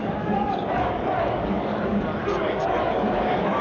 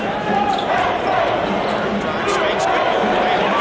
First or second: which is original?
second